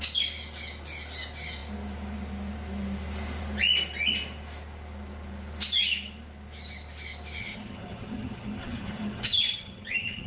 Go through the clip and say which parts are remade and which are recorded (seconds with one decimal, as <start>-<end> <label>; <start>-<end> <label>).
0.0-7.4 recorded; 7.4-10.3 remade

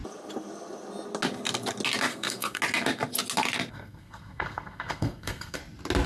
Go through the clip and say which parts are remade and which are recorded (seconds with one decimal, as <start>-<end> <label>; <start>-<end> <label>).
0.0-2.1 recorded; 2.1-2.6 remade; 2.6-3.7 recorded; 3.7-5.6 remade; 5.6-6.1 recorded

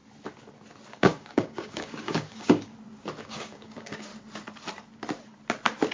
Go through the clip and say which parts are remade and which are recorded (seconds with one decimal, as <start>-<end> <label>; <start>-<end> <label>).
0.0-0.9 recorded; 0.9-2.7 remade; 2.7-3.2 recorded; 3.2-4.1 remade; 4.1-5.9 recorded

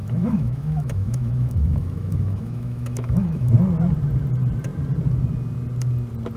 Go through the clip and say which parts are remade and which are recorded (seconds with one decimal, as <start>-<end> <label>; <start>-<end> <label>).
0.0-3.5 remade; 3.5-6.4 recorded

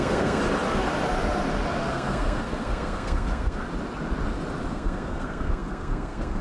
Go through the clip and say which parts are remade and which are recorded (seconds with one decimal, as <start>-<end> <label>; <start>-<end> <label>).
0.0-0.4 remade; 0.4-1.9 recorded; 1.9-3.6 remade; 3.6-4.7 recorded; 4.7-6.4 remade

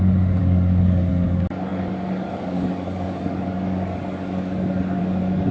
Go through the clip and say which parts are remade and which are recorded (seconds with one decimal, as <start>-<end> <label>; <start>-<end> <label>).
0.0-5.5 remade

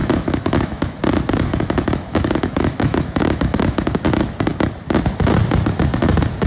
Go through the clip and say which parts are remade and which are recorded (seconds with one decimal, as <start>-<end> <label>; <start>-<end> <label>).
0.0-1.0 remade; 1.0-1.5 recorded; 1.5-3.9 remade; 3.9-6.5 recorded

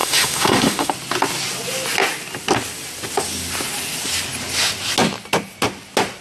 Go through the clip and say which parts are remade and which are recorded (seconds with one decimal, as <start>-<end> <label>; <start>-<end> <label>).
0.0-0.9 remade; 0.9-6.2 recorded